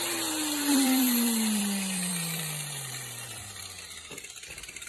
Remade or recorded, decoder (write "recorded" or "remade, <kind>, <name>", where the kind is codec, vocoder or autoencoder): remade, vocoder, BigVGAN v2